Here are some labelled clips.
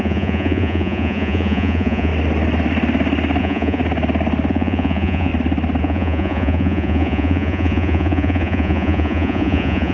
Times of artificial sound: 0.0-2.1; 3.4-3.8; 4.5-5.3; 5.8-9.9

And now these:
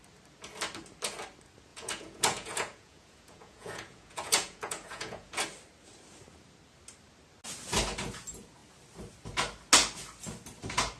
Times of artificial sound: 1.7-5.4

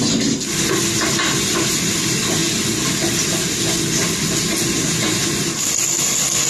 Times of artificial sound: none